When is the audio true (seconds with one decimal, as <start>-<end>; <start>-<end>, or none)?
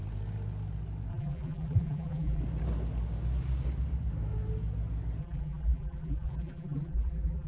0.0-1.1; 2.4-5.2